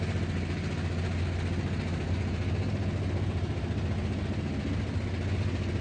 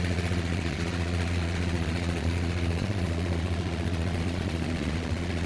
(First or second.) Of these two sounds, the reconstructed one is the second